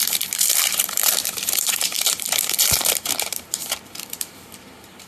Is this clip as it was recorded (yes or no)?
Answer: no